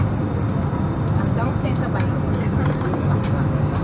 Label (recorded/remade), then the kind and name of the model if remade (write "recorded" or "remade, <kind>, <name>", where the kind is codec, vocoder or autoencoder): recorded